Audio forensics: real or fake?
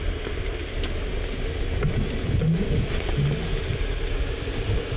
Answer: real